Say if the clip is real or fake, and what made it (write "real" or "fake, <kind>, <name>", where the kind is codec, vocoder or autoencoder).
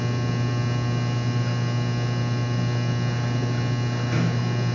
real